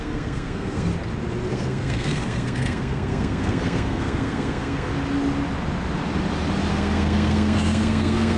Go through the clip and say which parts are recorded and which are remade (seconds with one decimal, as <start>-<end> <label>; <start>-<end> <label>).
0.0-0.9 remade; 0.9-1.5 recorded; 1.5-4.9 remade; 4.9-6.7 recorded; 6.7-8.4 remade